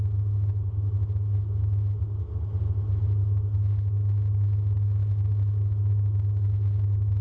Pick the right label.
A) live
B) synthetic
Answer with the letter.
A